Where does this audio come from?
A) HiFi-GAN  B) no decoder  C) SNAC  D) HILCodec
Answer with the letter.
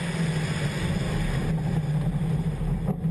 B